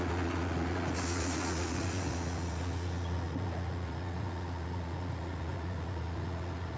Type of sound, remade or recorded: remade